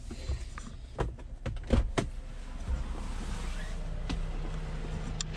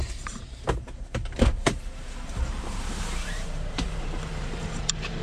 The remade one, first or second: second